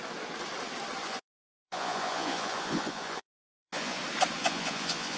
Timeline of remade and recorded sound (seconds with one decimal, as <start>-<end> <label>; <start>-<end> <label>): 0.0-1.0 recorded; 1.0-4.0 remade; 4.0-4.4 recorded; 4.4-5.2 remade